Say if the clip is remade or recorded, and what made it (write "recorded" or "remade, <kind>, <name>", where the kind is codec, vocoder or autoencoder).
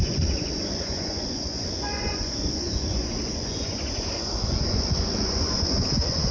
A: remade, vocoder, Vocos